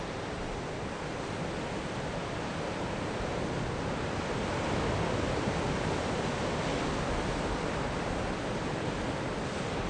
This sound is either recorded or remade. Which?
recorded